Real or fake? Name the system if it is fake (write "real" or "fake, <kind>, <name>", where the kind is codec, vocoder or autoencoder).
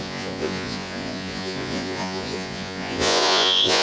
fake, vocoder, Vocos